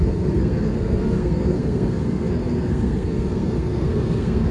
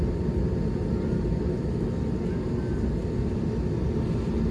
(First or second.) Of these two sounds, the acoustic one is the second